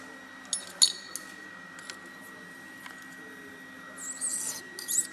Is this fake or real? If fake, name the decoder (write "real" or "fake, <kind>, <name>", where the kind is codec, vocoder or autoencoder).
real